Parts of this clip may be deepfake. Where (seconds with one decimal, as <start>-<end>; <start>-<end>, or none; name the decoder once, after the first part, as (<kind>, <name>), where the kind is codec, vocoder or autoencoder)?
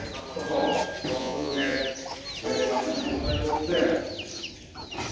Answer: 1.2-1.8 (vocoder, Vocos)